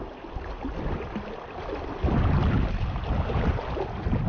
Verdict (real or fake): real